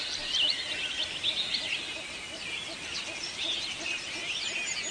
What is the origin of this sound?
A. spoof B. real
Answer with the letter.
B